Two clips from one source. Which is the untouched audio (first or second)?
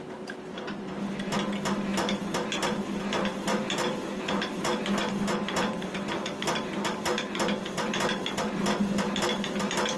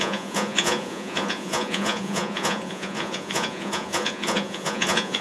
first